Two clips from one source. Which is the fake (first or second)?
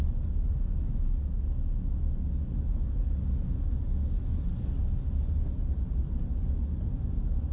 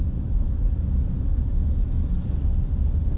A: second